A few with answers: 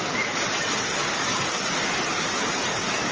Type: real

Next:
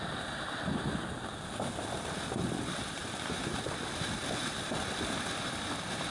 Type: real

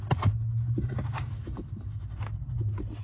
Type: real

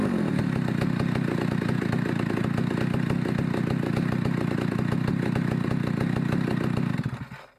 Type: real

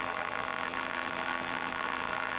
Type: fake